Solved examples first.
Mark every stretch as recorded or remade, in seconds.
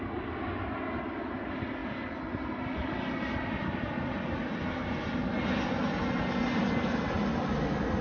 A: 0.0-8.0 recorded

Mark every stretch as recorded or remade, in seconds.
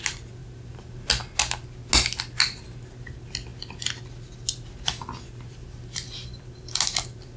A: 0.0-7.4 recorded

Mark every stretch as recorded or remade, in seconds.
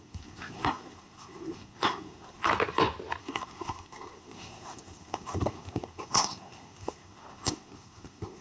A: 0.0-2.5 remade; 2.5-3.2 recorded; 3.2-8.4 remade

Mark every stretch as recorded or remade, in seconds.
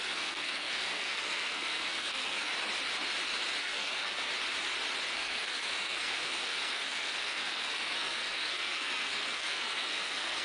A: 0.0-2.5 remade; 2.5-3.6 recorded; 3.6-4.3 remade; 4.3-5.1 recorded; 5.1-10.4 remade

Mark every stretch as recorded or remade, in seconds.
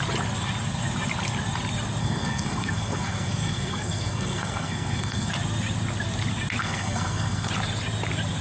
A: 0.0-2.0 recorded; 2.0-5.3 remade; 5.3-6.6 recorded; 6.6-7.5 remade; 7.5-8.4 recorded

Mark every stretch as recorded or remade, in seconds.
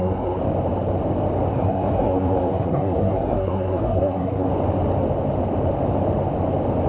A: 0.0-0.4 remade; 0.4-1.5 recorded; 1.5-4.5 remade; 4.5-6.9 recorded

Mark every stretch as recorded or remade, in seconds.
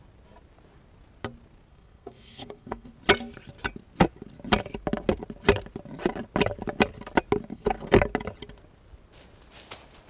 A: 0.0-1.7 recorded; 1.7-2.9 remade; 2.9-7.5 recorded; 7.5-8.0 remade; 8.0-10.1 recorded